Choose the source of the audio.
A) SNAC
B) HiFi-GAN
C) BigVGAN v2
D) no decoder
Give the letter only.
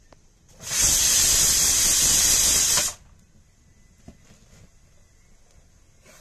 D